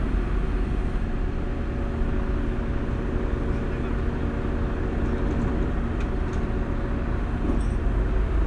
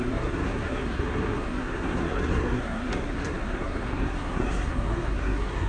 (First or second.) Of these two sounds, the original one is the first